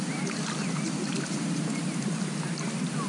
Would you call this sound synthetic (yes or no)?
no